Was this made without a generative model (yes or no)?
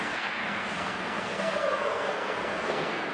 no